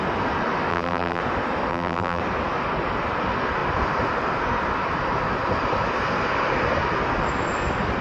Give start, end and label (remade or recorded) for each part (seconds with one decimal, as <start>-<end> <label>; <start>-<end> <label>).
0.0-0.7 recorded; 0.7-1.2 remade; 1.2-1.7 recorded; 1.7-2.2 remade; 2.2-8.0 recorded